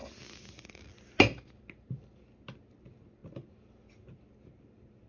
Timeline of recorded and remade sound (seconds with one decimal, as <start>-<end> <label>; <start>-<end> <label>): 0.0-5.1 recorded